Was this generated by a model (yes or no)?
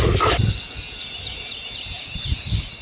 no